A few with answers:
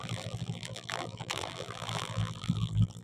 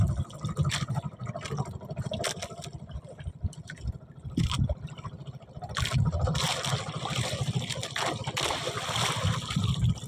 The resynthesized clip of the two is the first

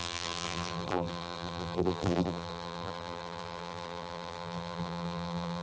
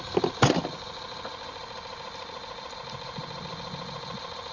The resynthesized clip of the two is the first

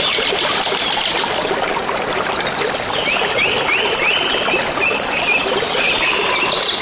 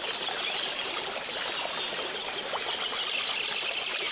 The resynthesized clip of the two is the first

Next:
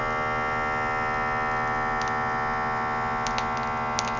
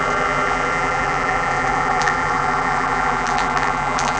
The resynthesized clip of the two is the second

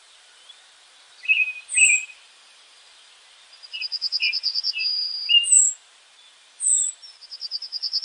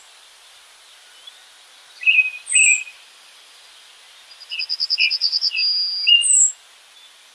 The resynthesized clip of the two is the first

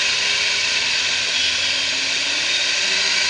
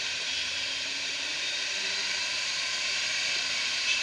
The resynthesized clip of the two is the second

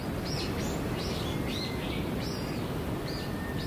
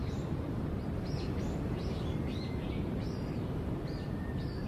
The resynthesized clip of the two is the second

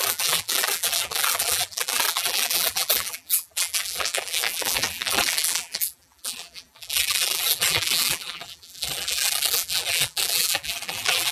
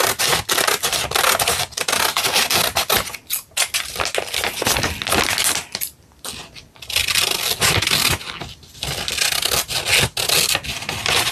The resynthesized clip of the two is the first